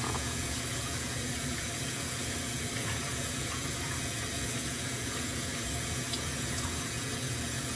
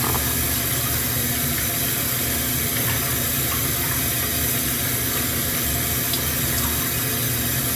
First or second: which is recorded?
second